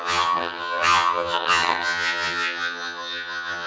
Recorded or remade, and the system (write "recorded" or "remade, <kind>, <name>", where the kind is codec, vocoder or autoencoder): remade, vocoder, HiFi-GAN